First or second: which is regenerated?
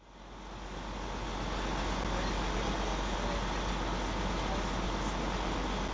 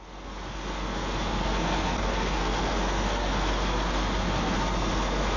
second